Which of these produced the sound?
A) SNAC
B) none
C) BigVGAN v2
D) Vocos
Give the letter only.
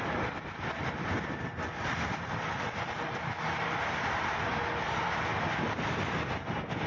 C